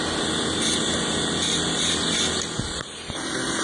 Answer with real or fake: real